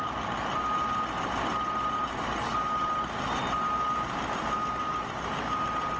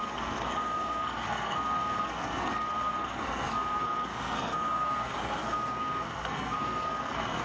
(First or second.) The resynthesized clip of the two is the second